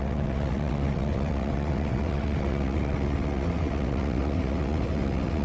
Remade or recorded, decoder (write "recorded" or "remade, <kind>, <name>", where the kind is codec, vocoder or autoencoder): remade, vocoder, WaveNeXt